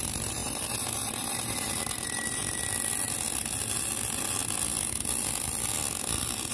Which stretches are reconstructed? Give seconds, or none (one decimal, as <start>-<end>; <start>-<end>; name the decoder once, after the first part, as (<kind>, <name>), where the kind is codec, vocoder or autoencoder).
0.0-2.4 (vocoder, BigVGAN v2)